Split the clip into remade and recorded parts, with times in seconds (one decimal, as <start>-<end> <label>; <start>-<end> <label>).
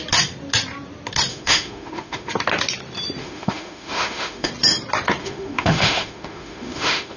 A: 0.0-1.3 recorded; 1.3-2.3 remade; 2.3-3.2 recorded; 3.2-4.5 remade; 4.5-5.2 recorded; 5.2-7.2 remade